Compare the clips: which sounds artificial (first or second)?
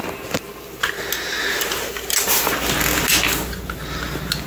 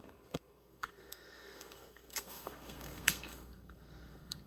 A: second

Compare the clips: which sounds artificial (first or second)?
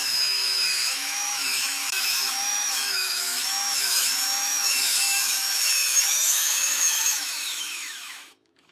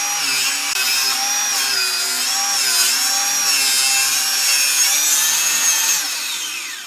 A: first